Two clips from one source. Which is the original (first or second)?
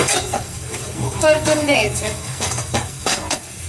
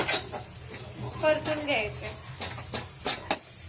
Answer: second